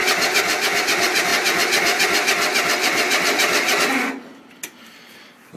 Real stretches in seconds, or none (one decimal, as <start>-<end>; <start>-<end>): 0.0-5.6